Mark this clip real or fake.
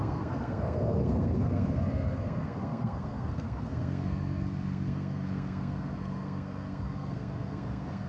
fake